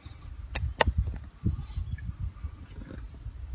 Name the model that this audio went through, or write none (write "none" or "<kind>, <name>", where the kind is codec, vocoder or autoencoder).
none